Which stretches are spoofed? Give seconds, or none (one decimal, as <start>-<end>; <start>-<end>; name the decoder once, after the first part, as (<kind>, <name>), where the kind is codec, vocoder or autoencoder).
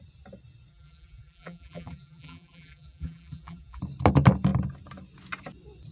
0.7-3.8 (vocoder, BigVGAN v2)